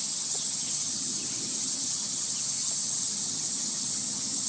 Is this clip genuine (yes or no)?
no